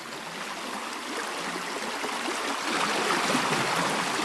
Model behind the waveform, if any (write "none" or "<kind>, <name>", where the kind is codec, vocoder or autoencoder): none